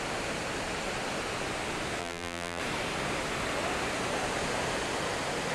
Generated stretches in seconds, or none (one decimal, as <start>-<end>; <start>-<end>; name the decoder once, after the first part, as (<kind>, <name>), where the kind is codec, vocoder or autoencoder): 2.0-2.6 (vocoder, BigVGAN v2)